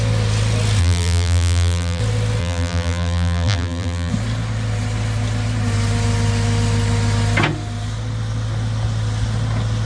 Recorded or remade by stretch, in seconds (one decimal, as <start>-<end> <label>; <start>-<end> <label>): 0.0-0.8 recorded; 0.8-2.0 remade; 2.0-2.4 recorded; 2.4-4.1 remade; 4.1-9.9 recorded